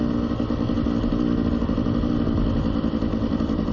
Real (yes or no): yes